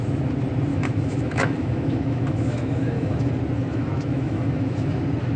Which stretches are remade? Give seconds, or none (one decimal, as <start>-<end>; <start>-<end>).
0.7-3.3; 3.7-5.0